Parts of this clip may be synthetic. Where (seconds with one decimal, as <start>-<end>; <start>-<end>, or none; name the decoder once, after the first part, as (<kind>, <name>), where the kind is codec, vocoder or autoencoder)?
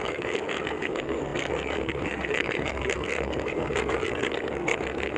0.0-5.2 (codec, SNAC)